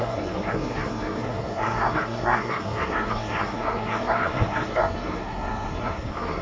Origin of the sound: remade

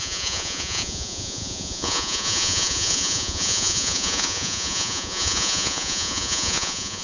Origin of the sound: remade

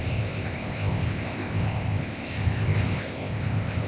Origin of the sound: remade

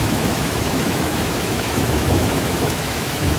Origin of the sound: remade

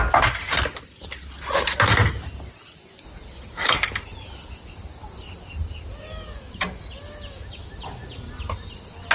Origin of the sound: recorded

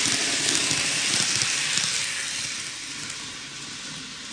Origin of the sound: recorded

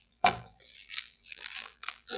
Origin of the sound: remade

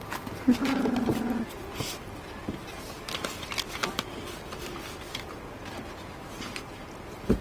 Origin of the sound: recorded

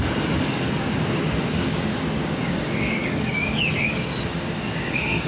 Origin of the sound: remade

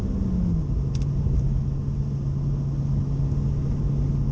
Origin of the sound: recorded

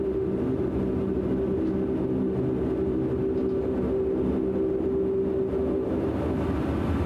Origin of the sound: recorded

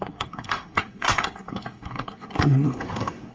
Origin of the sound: remade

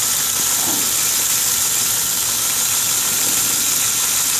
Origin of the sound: recorded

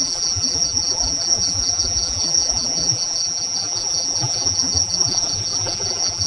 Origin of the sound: remade